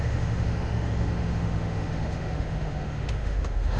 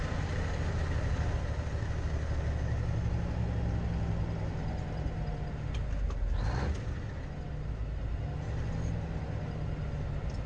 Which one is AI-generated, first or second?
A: first